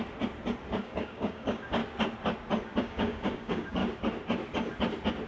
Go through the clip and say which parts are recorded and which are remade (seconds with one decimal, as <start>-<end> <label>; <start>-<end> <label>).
0.0-0.8 recorded; 0.8-1.8 remade; 1.8-2.8 recorded; 2.8-3.8 remade; 3.8-5.3 recorded